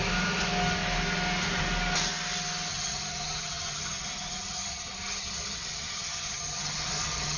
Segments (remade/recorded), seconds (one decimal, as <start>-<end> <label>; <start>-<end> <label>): 0.0-2.7 recorded; 2.7-7.4 remade